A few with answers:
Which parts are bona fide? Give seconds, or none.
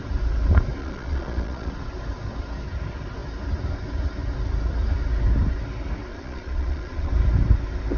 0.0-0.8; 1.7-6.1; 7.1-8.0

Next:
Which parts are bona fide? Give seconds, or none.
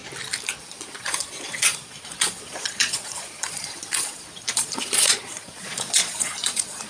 0.0-0.6